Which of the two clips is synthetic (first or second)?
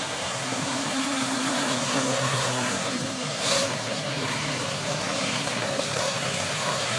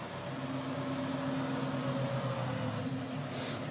first